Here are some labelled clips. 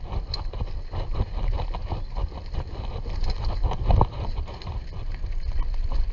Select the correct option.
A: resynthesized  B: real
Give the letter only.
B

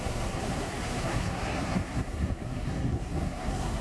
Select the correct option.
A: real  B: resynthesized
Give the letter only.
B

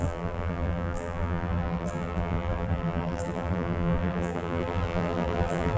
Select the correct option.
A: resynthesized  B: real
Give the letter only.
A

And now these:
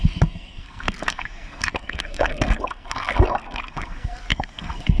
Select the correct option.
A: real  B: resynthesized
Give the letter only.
B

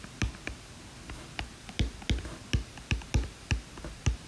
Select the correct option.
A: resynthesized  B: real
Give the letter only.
B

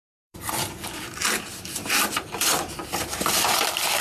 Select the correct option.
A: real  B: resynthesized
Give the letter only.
B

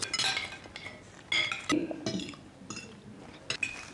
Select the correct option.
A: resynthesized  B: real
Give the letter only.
B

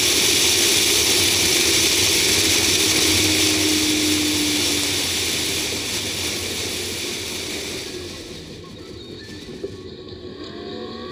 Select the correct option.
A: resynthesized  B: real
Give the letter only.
B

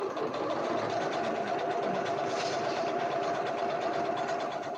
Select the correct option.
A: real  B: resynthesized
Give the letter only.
B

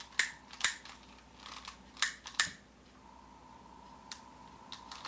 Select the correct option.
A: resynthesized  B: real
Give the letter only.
B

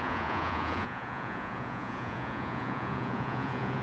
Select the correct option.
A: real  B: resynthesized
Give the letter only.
B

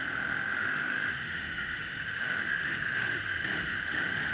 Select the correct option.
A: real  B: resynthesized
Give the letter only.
B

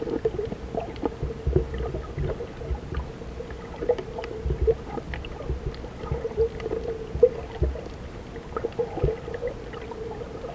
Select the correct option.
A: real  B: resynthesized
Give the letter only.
A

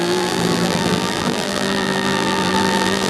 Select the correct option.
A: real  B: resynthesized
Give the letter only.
B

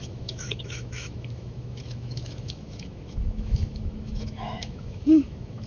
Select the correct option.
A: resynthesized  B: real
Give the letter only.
A